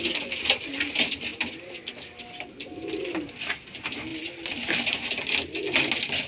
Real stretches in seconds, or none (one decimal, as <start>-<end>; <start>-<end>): 0.0-1.3; 2.2-4.1; 5.0-6.3